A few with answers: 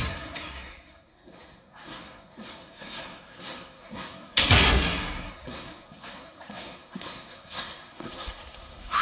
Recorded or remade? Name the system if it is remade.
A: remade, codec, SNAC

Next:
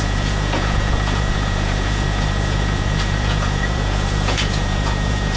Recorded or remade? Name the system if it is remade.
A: remade, vocoder, Vocos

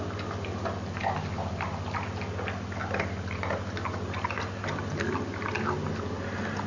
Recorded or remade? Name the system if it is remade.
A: recorded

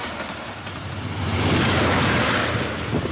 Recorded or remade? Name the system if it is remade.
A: recorded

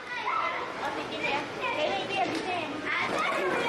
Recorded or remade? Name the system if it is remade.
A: remade, vocoder, BigVGAN v2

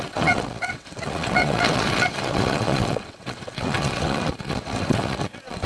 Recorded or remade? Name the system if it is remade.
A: remade, vocoder, WaveNeXt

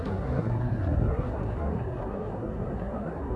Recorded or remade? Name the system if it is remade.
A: remade, codec, SNAC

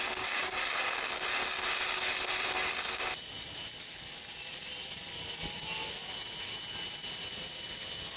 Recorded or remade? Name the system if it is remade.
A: recorded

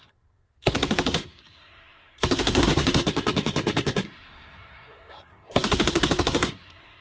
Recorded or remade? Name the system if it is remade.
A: remade, codec, SNAC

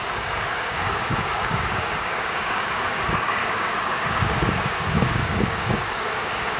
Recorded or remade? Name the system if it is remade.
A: remade, codec, DAC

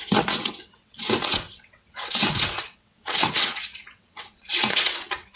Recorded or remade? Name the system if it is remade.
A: remade, vocoder, WaveNeXt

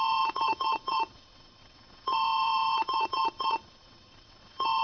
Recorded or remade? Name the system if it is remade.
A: remade, vocoder, WaveNeXt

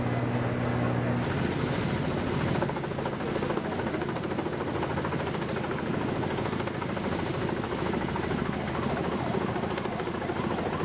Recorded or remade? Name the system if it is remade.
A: recorded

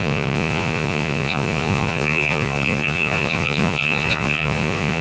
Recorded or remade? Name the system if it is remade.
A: remade, vocoder, Vocos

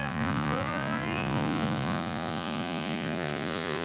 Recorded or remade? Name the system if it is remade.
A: remade, vocoder, Vocos